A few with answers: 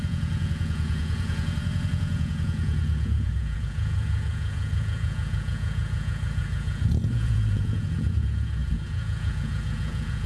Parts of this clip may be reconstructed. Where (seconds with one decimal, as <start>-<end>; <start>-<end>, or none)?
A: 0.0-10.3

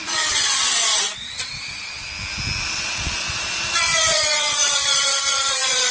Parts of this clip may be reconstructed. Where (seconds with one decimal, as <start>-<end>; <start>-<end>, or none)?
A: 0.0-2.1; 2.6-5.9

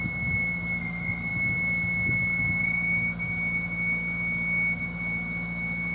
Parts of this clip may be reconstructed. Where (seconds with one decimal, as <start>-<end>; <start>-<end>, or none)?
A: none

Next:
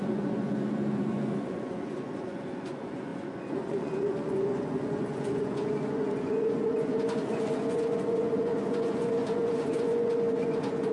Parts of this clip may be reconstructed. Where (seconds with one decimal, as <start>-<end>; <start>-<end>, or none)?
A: 0.0-10.9

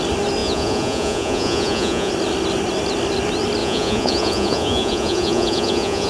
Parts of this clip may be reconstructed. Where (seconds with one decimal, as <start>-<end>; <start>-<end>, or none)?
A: 0.4-2.1; 3.6-6.1